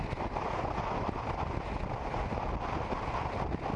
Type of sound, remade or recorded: recorded